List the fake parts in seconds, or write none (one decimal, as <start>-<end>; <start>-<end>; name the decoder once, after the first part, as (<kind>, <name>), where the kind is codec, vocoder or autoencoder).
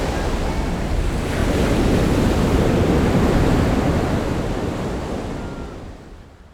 1.4-5.3 (vocoder, BigVGAN v2)